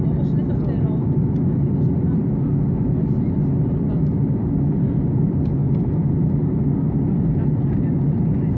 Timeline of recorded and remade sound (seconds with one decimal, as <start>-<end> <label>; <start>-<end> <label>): 0.0-8.6 recorded